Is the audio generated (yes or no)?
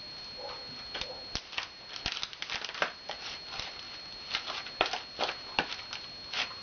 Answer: no